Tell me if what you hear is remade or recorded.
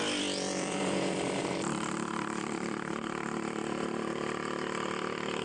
remade